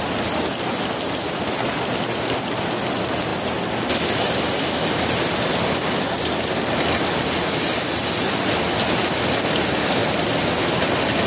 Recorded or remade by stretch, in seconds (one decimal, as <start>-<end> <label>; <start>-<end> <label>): 0.0-11.3 recorded